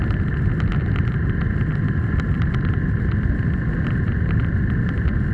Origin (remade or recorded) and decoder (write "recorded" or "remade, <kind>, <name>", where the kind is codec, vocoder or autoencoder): recorded